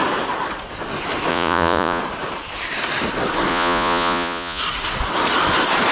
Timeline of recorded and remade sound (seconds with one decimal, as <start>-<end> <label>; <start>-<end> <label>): 0.0-1.3 recorded; 1.3-2.0 remade; 2.0-3.5 recorded; 3.5-4.6 remade; 4.6-5.9 recorded